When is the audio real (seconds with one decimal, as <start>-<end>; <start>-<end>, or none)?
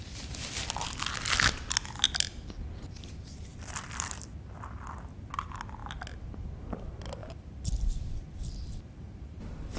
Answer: 0.0-3.5; 4.3-7.2